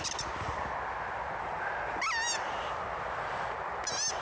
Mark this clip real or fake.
real